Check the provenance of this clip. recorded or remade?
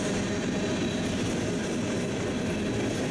recorded